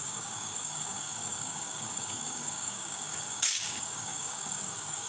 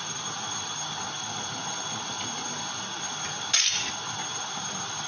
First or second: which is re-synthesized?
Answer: first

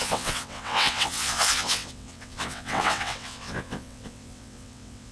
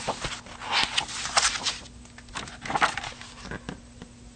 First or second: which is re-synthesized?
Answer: first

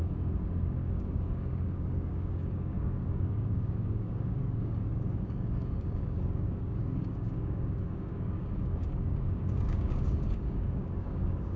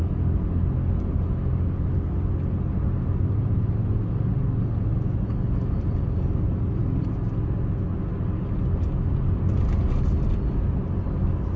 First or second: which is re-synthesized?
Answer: first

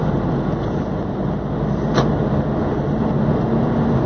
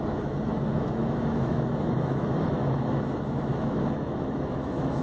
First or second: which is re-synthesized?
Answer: second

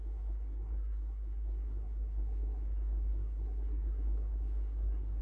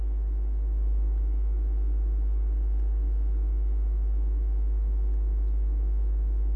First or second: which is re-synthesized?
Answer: first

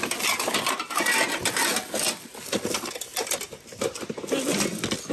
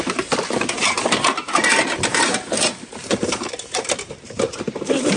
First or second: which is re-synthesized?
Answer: second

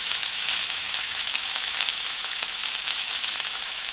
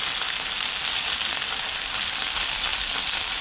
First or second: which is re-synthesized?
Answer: first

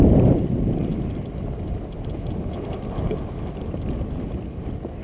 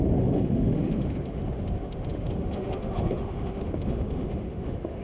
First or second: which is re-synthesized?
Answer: second